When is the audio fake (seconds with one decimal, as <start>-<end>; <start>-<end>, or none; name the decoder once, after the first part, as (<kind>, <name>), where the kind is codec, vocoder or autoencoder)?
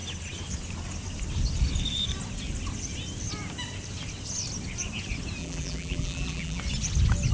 5.4-6.6 (vocoder, BigVGAN v2)